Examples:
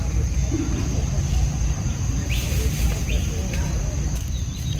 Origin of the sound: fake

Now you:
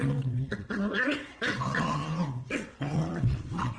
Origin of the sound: fake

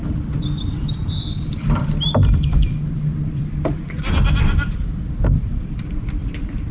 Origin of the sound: fake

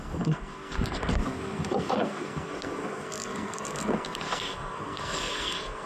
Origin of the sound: fake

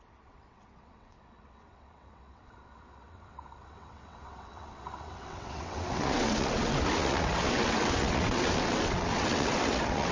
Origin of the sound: fake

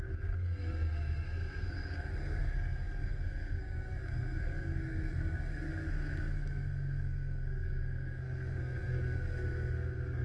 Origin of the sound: fake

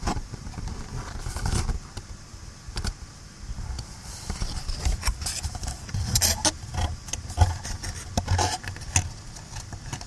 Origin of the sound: real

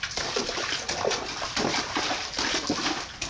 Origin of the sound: real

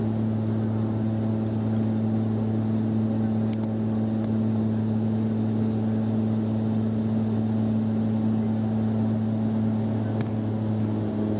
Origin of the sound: real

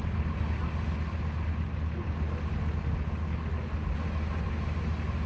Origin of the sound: real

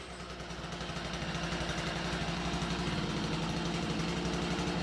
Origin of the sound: real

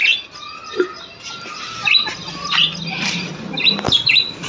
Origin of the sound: real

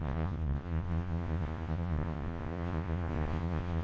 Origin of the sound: fake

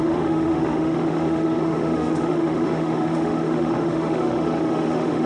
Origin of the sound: fake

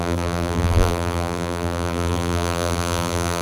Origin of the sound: fake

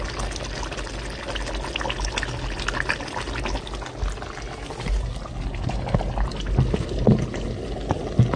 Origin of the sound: real